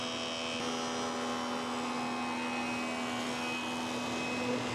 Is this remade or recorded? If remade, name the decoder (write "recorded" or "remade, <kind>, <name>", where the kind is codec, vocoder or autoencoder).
recorded